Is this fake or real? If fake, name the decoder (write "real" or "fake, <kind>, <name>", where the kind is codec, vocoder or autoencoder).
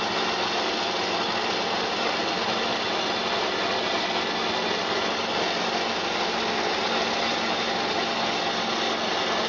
real